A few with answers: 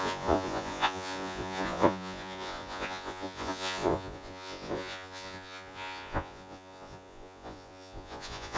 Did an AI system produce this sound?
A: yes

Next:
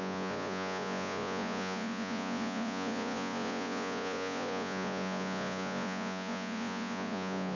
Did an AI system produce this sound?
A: yes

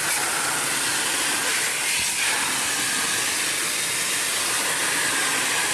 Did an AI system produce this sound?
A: no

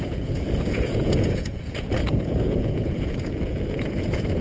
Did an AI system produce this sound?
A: yes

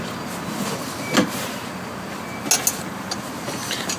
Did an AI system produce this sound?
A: no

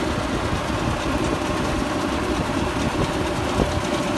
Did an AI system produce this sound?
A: no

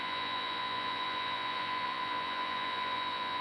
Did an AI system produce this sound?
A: yes